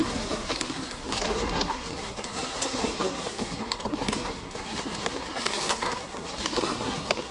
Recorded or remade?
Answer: remade